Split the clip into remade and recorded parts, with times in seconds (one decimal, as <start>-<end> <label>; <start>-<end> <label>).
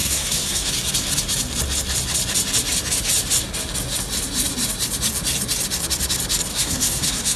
0.0-0.7 remade; 0.7-6.5 recorded; 6.5-7.4 remade